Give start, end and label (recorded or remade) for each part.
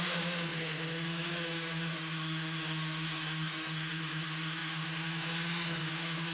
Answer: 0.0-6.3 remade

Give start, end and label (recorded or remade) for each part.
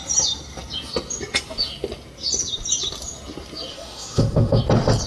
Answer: 0.0-3.7 recorded; 3.7-4.6 remade; 4.6-5.1 recorded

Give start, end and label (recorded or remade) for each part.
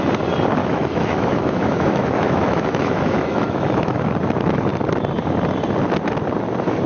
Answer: 0.0-0.6 recorded; 0.6-4.0 remade; 4.0-6.9 recorded